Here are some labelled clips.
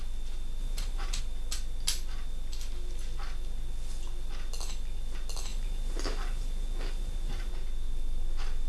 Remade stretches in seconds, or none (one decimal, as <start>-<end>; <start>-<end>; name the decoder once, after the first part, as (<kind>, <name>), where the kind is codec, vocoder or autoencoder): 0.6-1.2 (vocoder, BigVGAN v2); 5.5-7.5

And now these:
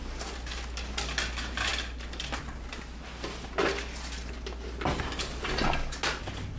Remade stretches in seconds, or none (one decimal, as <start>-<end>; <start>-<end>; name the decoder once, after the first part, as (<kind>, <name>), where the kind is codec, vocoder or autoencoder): none

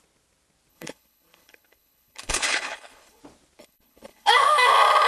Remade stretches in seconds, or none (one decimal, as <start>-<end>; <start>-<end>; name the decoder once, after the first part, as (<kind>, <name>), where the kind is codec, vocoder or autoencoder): 0.7-3.2 (codec, HILCodec); 3.6-4.3